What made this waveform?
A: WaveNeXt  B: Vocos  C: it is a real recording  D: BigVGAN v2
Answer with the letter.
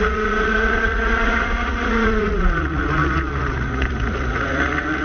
B